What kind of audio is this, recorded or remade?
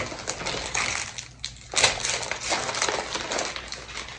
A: recorded